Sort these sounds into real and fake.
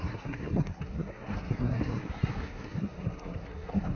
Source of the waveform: fake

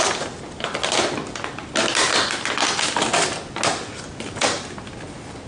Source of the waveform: real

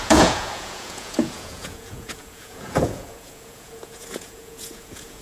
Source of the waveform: fake